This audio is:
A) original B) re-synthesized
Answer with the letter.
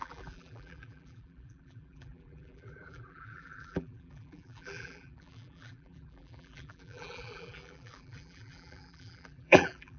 B